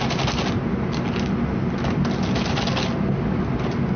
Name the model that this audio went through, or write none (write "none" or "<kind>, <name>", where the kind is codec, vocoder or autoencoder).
none